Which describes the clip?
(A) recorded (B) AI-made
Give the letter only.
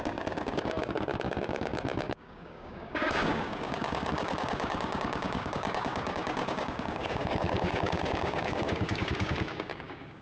B